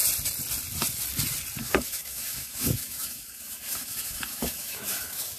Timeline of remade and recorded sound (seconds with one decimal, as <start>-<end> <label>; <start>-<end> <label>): 0.0-1.6 recorded; 1.6-5.4 remade